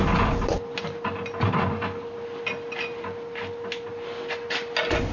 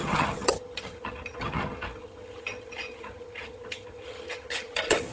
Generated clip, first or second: second